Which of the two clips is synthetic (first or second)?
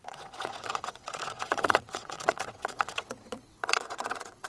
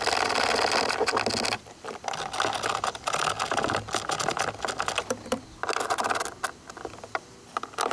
first